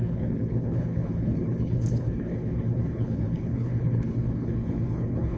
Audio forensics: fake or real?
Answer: fake